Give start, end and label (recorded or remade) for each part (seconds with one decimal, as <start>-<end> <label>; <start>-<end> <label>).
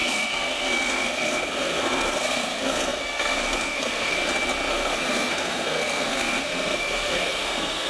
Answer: 0.0-4.2 remade; 4.2-4.7 recorded; 4.7-7.9 remade